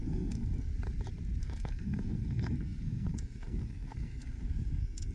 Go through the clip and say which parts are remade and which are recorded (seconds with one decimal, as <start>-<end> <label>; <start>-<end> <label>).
0.0-0.7 remade; 0.7-1.4 recorded; 1.4-5.1 remade